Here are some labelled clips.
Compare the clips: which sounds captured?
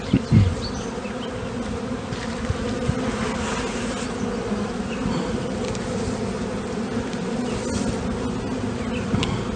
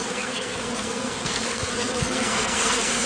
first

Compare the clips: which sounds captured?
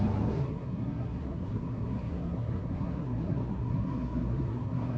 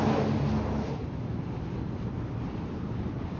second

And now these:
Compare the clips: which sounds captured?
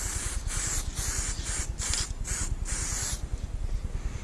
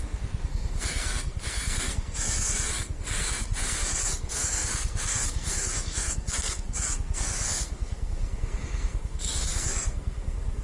first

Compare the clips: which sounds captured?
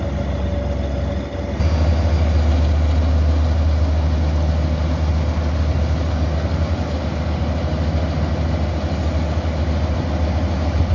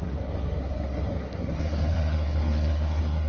first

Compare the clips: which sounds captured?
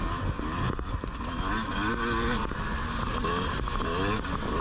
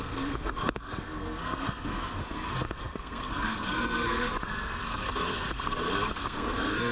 first